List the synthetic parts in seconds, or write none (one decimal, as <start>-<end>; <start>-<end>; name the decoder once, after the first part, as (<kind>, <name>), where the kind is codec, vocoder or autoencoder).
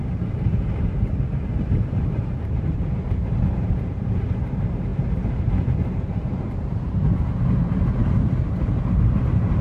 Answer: 0.0-8.0 (vocoder, BigVGAN v2); 9.2-9.6